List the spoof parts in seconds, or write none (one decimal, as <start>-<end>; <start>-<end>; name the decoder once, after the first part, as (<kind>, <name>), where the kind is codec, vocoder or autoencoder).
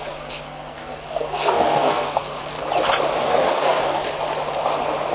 0.0-2.4 (codec, SNAC); 3.2-4.0